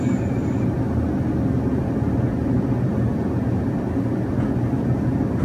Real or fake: real